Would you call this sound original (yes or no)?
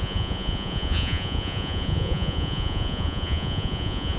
no